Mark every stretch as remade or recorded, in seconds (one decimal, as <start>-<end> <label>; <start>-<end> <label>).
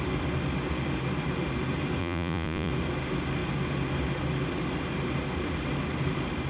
0.0-2.0 recorded; 2.0-2.7 remade; 2.7-6.5 recorded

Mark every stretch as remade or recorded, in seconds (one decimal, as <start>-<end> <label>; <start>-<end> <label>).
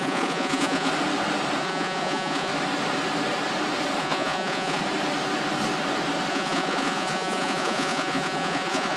0.0-0.9 remade; 0.9-1.6 recorded; 1.6-2.5 remade; 2.5-4.0 recorded; 4.0-4.8 remade; 4.8-6.3 recorded; 6.3-9.0 remade